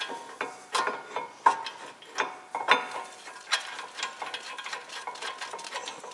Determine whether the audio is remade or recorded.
recorded